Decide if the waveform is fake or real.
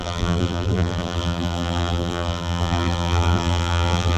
fake